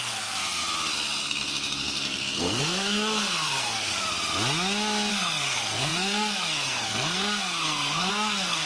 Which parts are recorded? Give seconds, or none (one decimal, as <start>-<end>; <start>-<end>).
0.6-1.2; 3.9-5.1